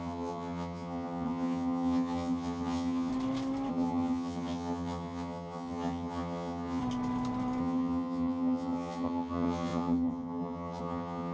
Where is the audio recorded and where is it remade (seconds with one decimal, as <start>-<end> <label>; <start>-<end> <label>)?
0.0-3.1 remade; 3.1-3.7 recorded; 3.7-6.8 remade; 6.8-7.6 recorded; 7.6-11.3 remade